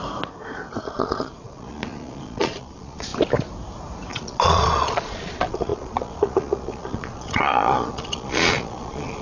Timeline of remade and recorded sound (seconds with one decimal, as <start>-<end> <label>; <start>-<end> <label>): 0.0-0.8 recorded; 0.8-3.1 remade; 3.1-4.1 recorded; 4.1-9.2 remade